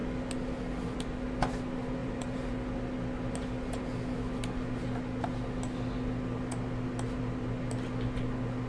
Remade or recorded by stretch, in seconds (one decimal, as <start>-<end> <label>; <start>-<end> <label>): 0.0-2.0 recorded; 2.0-2.5 remade; 2.5-8.7 recorded